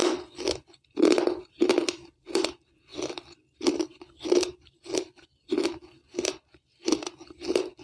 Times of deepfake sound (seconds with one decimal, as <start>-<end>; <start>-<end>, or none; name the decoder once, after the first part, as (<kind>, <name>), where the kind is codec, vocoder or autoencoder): none